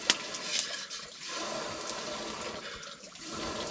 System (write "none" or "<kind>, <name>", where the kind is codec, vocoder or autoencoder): none